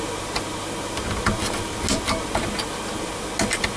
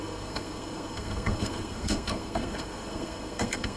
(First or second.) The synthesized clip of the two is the second